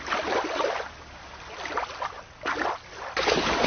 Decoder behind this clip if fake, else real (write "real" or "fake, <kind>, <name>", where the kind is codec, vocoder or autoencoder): real